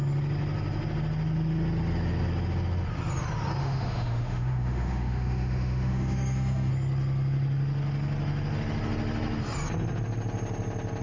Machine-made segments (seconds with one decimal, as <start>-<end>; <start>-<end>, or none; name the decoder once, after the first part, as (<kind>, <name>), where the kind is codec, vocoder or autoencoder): 3.6-6.7 (autoencoder, DAC-VAE)